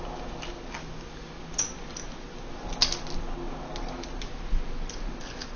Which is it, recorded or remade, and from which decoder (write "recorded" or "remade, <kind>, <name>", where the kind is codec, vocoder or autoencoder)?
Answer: recorded